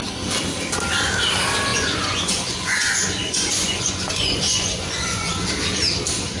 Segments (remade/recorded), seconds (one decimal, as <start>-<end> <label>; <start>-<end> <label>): 0.0-1.7 recorded; 1.7-5.5 remade; 5.5-6.4 recorded